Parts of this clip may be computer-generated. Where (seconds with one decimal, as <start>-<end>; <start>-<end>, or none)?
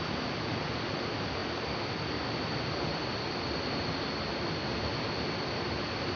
none